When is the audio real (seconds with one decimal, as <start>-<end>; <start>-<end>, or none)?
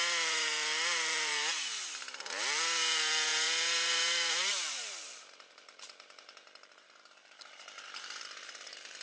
none